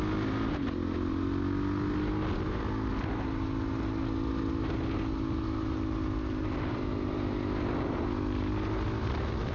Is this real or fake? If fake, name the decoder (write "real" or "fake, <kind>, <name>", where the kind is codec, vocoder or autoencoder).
real